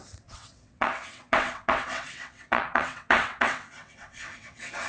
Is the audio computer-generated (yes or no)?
yes